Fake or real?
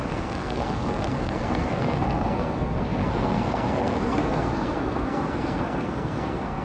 fake